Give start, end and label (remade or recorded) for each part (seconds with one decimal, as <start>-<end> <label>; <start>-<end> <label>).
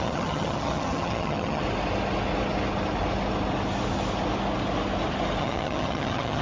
0.0-1.6 remade; 1.6-5.4 recorded; 5.4-6.4 remade